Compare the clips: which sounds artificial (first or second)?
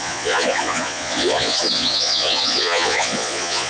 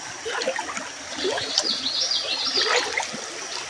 first